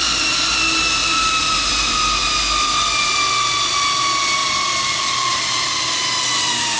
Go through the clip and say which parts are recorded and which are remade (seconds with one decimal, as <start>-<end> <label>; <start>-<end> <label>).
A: 0.0-1.0 recorded; 1.0-1.7 remade; 1.7-6.8 recorded